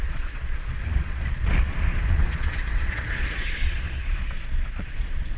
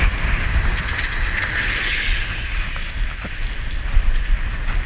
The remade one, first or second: first